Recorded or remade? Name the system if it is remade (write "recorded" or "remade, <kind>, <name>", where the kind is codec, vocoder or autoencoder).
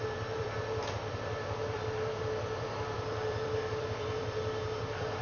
remade, vocoder, BigVGAN v2